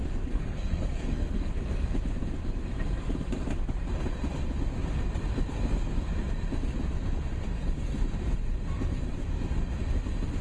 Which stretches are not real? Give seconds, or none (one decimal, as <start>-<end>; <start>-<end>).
0.0-1.5